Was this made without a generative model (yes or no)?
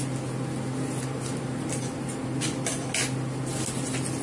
yes